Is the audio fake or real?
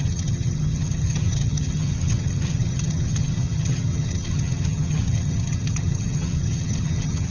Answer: fake